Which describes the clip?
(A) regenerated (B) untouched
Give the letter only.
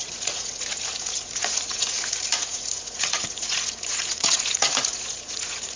A